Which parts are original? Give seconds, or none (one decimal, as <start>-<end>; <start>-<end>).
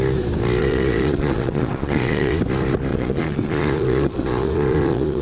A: 0.0-0.6; 2.4-2.9